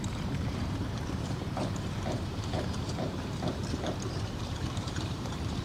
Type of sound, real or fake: fake